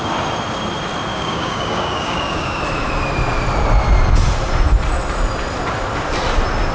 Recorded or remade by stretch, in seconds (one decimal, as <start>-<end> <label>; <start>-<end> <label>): 0.0-1.1 recorded; 1.1-2.6 remade; 2.6-6.7 recorded